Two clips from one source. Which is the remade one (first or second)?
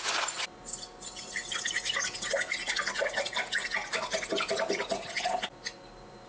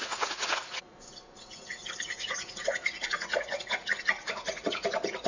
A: second